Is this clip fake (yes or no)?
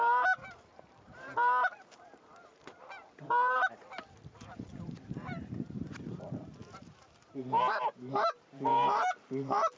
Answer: yes